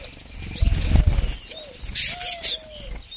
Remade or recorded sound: recorded